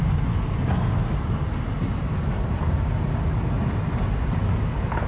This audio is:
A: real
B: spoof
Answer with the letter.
A